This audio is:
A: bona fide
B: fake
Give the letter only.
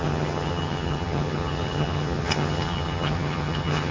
B